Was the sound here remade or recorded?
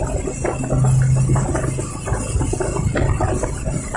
recorded